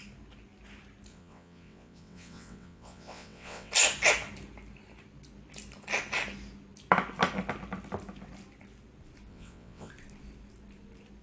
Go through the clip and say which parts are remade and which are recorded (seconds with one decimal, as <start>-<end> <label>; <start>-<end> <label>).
0.0-1.1 recorded; 1.1-3.7 remade; 3.7-9.3 recorded; 9.3-9.9 remade; 9.9-11.2 recorded